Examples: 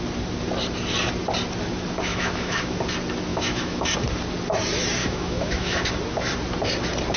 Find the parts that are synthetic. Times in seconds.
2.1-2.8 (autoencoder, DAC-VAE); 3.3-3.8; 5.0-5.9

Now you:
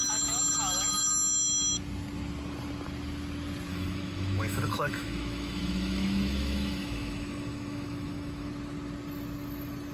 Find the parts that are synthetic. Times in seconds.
3.7-8.5 (autoencoder, DAC-VAE)

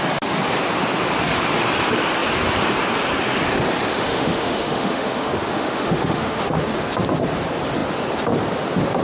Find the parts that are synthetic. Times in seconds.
3.9-6.6 (autoencoder, DAC-VAE)